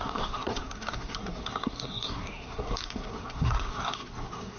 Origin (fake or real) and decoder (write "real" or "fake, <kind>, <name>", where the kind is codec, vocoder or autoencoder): fake, codec, SNAC